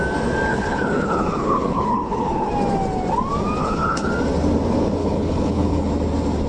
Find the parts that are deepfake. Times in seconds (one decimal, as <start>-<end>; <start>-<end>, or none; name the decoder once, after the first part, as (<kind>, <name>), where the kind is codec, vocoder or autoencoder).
0.5-2.5 (codec, HILCodec); 3.6-4.1; 5.0-5.9